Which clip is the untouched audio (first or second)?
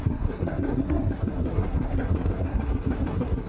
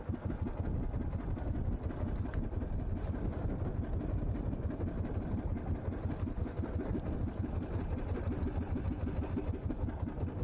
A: second